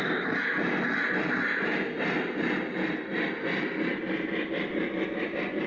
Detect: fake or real real